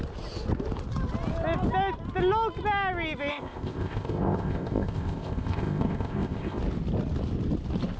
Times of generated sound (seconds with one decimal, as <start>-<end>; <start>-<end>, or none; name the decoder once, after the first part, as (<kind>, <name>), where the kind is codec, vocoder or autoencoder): 3.3-6.6 (codec, ZipCodec)